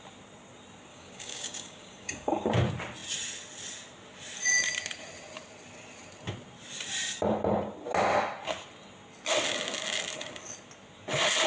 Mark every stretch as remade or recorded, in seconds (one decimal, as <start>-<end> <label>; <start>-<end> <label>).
0.0-0.9 recorded; 0.9-2.5 remade; 2.5-11.5 recorded